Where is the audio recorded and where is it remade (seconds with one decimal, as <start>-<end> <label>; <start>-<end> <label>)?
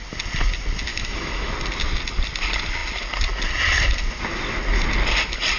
0.0-0.9 recorded; 0.9-1.5 remade; 1.5-5.6 recorded